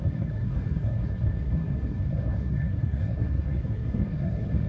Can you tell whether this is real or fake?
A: fake